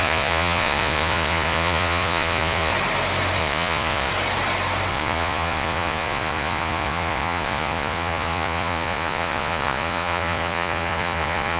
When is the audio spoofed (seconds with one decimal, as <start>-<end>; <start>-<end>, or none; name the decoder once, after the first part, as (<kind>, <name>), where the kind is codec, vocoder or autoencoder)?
0.0-2.7 (vocoder, Vocos); 3.4-4.1; 4.9-11.6